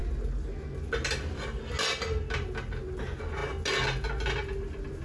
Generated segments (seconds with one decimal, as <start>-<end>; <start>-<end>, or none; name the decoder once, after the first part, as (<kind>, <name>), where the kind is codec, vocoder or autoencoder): none

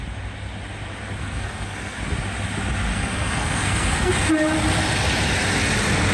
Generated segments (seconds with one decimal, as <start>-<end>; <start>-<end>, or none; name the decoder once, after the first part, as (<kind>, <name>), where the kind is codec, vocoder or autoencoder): 1.2-2.0 (codec, SNAC); 2.9-4.1

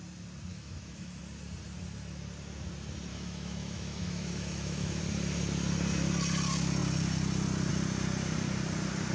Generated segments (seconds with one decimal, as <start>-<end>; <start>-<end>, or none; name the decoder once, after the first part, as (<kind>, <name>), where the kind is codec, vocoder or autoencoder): 0.5-1.2 (autoencoder, DAC-VAE); 3.1-5.0

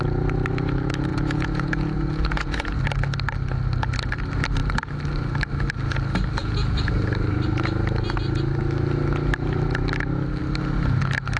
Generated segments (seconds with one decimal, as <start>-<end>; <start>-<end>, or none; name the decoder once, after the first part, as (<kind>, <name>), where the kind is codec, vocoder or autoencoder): 1.1-2.8 (vocoder, Vocos); 6.4-6.9

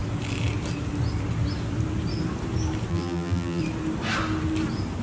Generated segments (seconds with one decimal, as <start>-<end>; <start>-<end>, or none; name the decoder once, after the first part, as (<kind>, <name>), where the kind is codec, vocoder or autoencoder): 2.9-3.6 (vocoder, BigVGAN v2)